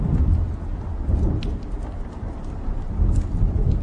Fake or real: real